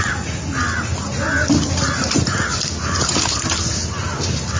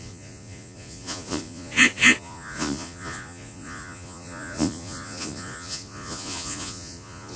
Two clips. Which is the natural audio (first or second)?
first